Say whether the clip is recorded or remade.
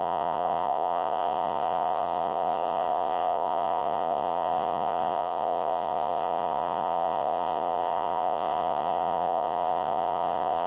remade